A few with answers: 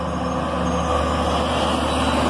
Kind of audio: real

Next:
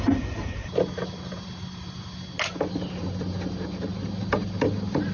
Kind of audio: real